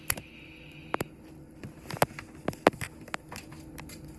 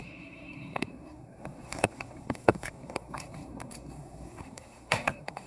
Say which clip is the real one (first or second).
first